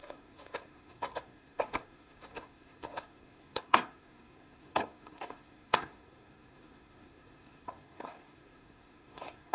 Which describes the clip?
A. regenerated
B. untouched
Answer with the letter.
A